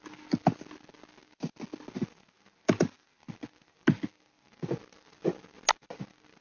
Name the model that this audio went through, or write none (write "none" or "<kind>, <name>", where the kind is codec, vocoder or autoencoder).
none